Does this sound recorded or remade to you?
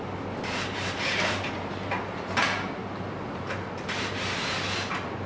recorded